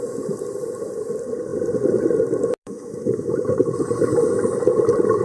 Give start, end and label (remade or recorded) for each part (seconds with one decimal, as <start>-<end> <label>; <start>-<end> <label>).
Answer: 0.0-2.6 recorded; 2.6-3.5 remade; 3.5-5.2 recorded